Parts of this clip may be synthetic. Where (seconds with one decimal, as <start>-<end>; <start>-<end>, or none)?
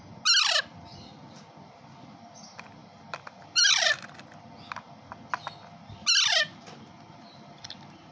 2.8-4.2; 6.5-8.1